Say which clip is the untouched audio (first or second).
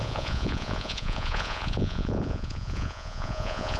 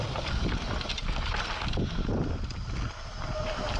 second